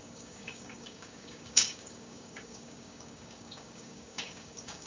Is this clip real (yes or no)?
no